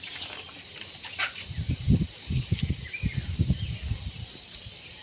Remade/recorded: remade